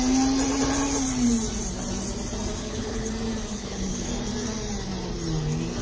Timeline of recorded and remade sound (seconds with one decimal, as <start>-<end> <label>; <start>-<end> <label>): 0.0-2.6 recorded; 2.6-3.1 remade; 3.1-3.5 recorded; 3.5-4.1 remade; 4.1-5.8 recorded